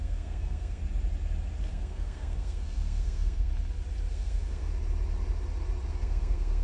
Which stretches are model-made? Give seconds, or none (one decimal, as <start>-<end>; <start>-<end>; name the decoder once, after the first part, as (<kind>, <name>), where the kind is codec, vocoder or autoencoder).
0.0-0.8 (codec, SNAC); 1.7-3.5; 4.1-4.7; 5.9-6.6